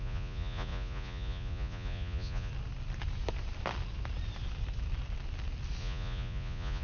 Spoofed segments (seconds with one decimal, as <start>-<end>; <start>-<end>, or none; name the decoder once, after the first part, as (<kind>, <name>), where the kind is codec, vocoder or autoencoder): 0.0-2.5 (vocoder, Vocos); 5.8-6.8